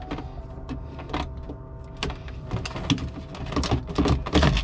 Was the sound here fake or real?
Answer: real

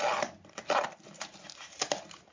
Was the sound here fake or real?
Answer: fake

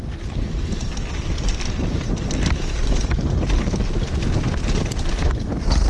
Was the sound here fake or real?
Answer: real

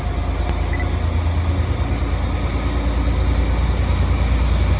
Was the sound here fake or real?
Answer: real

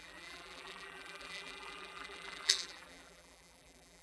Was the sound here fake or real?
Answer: fake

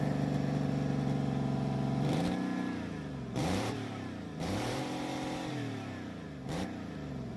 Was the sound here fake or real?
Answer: fake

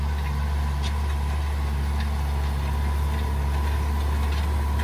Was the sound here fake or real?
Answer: real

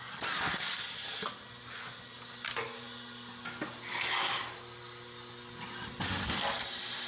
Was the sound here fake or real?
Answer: real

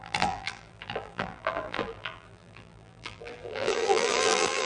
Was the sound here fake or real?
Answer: fake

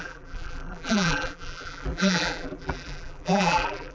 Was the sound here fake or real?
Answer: fake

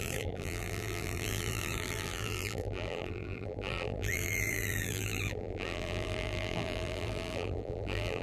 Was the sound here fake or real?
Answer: fake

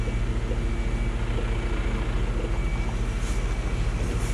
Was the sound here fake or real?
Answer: real